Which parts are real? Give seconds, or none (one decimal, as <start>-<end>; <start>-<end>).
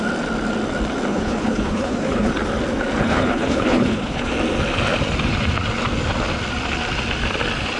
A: 0.0-1.1; 2.3-3.0; 4.3-7.8